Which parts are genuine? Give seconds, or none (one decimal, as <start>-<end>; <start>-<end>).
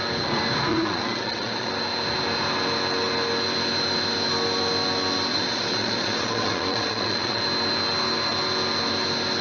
0.0-0.7; 1.7-5.3; 7.4-9.4